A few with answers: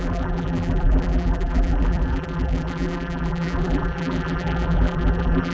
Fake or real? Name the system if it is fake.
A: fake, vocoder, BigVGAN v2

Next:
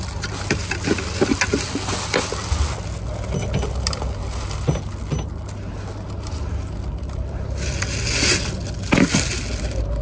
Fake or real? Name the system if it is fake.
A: real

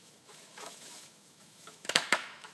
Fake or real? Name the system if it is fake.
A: fake, autoencoder, DAC-VAE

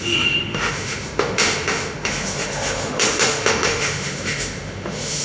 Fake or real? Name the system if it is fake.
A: fake, autoencoder, DAC-VAE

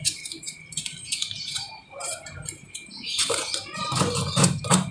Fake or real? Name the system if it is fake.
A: fake, vocoder, BigVGAN v2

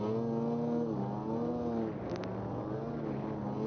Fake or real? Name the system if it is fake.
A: real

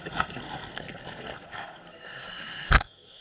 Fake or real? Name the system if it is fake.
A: fake, codec, SNAC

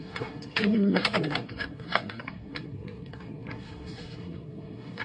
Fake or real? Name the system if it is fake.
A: fake, codec, SNAC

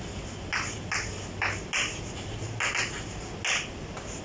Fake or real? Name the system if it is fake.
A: real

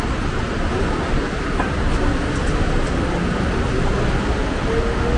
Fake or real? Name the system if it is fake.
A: real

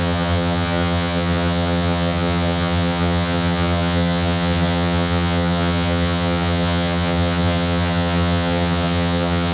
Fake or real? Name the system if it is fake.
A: fake, vocoder, HiFi-GAN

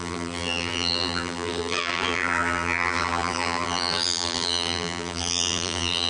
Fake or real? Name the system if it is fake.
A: fake, vocoder, BigVGAN v2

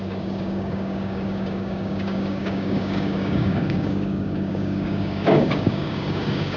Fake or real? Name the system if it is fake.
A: fake, codec, DAC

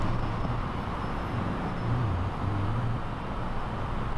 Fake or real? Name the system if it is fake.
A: real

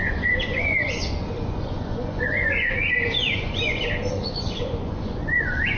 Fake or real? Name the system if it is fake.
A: fake, vocoder, Vocos